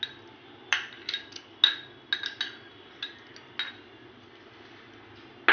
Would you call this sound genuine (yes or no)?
yes